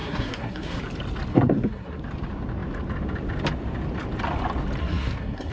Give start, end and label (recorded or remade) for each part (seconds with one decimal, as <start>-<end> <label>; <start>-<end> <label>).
0.0-0.8 remade; 0.8-1.3 recorded; 1.3-2.0 remade; 2.0-4.8 recorded; 4.8-5.5 remade